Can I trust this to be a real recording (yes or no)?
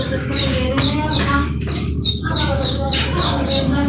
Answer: no